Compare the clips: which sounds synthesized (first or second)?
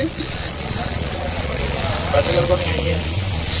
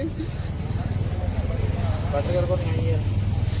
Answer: first